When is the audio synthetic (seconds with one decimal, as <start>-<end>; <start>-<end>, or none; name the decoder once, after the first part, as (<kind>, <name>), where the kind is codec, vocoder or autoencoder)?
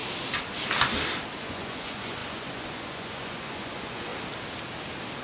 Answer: 1.4-4.1 (vocoder, Vocos)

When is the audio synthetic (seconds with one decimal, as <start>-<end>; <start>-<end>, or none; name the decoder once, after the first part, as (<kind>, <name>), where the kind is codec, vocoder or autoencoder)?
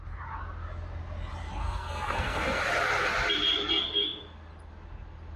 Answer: 1.6-2.6 (codec, SNAC)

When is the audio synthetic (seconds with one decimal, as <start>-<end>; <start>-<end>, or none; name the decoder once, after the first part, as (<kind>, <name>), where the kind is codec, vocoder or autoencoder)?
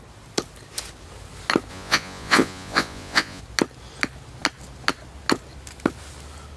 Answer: 1.7-3.4 (vocoder, Vocos)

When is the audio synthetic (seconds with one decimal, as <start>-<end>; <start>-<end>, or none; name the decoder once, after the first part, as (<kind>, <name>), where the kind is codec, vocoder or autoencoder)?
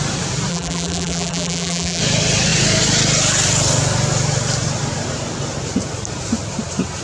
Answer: 0.5-2.0 (vocoder, BigVGAN v2)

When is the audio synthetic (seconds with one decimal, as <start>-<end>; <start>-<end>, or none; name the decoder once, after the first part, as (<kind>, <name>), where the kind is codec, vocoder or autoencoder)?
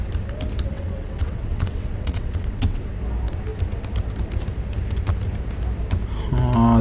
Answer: 0.7-2.9 (vocoder, WaveNeXt)